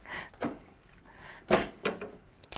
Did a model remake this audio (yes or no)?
yes